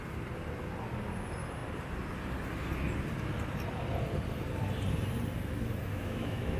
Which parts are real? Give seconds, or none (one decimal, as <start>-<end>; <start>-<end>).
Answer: 0.0-5.9

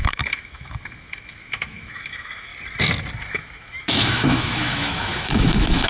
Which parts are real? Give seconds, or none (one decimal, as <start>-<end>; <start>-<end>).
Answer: 2.5-3.3